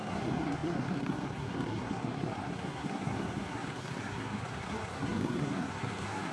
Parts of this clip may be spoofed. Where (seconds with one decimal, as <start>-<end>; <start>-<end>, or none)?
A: 0.0-6.3